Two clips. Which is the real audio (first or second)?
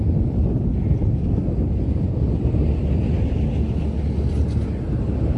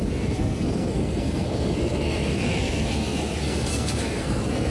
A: first